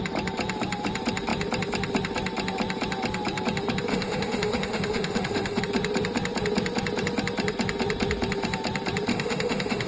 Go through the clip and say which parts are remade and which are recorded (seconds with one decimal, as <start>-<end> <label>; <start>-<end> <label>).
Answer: 0.0-3.9 recorded; 3.9-5.6 remade; 5.6-9.1 recorded; 9.1-9.9 remade